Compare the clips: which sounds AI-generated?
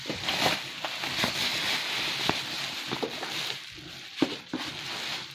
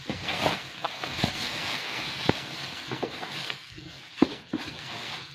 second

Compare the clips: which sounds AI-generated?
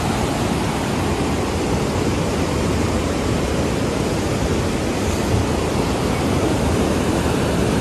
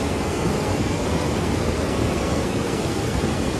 second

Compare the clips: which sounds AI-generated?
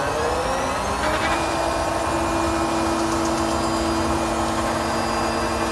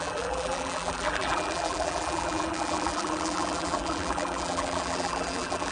second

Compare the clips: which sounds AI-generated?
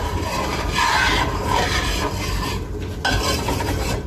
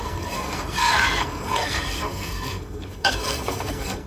second